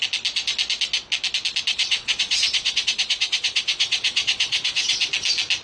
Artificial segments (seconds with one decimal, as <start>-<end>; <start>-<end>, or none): 1.7-5.1